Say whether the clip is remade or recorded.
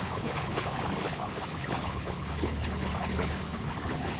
remade